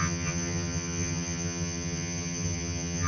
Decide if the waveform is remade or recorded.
remade